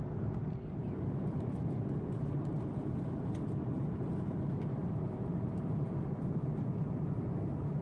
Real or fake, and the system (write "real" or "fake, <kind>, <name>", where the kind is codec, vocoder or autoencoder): real